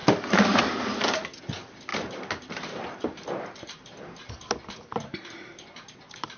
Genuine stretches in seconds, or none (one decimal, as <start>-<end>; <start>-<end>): 0.0-1.9; 4.2-4.9